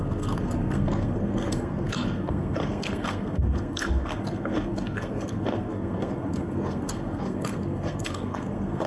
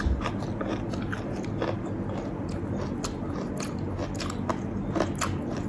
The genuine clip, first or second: second